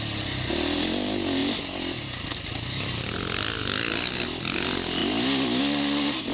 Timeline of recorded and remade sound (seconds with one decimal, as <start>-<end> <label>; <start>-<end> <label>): 0.0-6.3 recorded